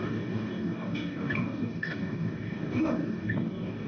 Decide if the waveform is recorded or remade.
remade